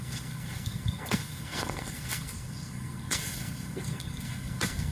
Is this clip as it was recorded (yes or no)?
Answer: no